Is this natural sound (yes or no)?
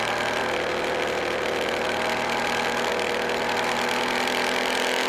yes